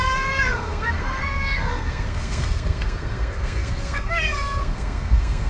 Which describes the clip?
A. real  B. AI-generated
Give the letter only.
B